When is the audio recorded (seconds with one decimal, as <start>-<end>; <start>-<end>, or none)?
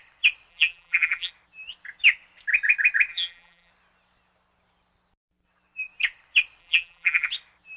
0.0-0.5; 1.3-3.1; 3.7-6.6; 7.3-7.8